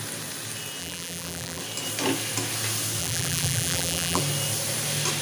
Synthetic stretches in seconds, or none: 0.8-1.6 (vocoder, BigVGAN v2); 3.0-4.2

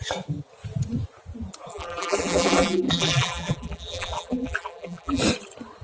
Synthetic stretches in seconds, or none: 1.7-5.2 (vocoder, BigVGAN v2)

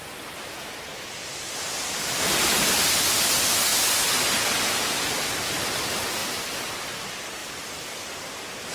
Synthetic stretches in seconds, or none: 0.9-1.8 (vocoder, BigVGAN v2); 6.2-6.7; 7.4-8.1